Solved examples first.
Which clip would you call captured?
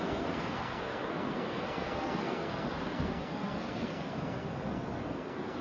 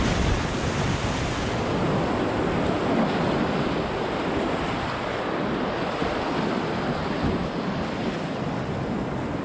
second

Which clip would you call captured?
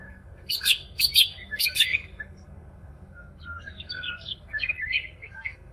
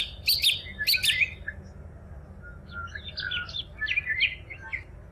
second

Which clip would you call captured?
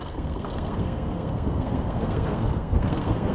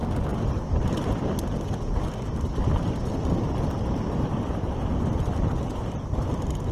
second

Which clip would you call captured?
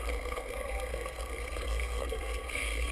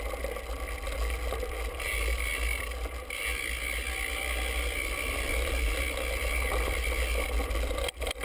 second